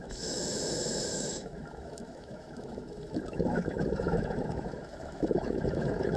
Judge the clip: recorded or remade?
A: remade